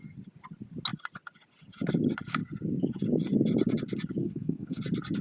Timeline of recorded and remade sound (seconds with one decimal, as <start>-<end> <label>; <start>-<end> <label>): 0.0-4.2 recorded; 4.2-4.8 remade; 4.8-5.2 recorded

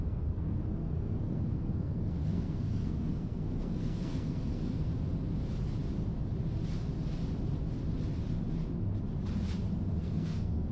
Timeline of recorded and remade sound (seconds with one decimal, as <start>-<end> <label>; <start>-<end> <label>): 0.0-4.9 remade; 4.9-10.0 recorded; 10.0-10.7 remade

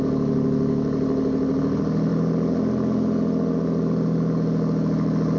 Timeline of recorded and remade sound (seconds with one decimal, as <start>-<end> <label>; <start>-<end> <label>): 0.0-5.4 recorded

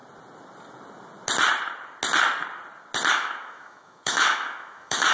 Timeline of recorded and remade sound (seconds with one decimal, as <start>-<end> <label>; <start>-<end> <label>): 0.0-3.1 recorded; 3.1-5.1 remade

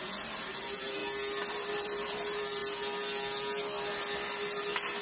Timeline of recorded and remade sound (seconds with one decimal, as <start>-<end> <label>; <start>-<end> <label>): 0.0-1.0 remade; 1.0-1.5 recorded; 1.5-2.6 remade; 2.6-5.0 recorded

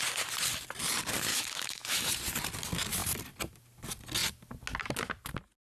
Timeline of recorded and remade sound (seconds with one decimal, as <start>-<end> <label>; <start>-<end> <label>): 0.0-1.3 recorded; 1.3-2.1 remade; 2.1-5.7 recorded

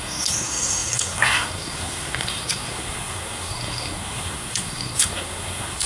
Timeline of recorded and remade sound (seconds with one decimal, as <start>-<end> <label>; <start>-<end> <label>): 0.0-5.9 remade